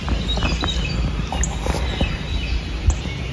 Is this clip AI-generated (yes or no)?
no